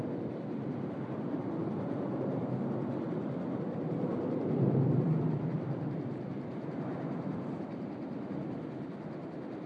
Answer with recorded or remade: remade